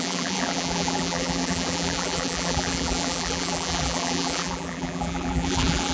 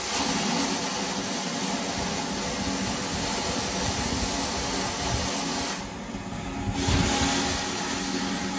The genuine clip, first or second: second